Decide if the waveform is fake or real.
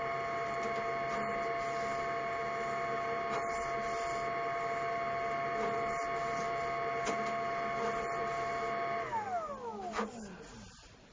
real